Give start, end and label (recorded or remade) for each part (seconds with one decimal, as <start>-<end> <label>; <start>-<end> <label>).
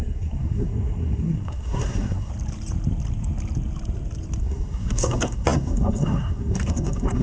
0.0-2.3 remade; 2.3-4.4 recorded; 4.4-7.2 remade